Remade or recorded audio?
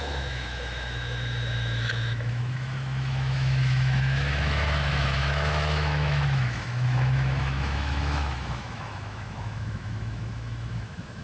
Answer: remade